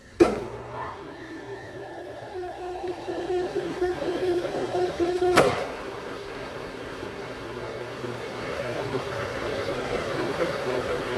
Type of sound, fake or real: fake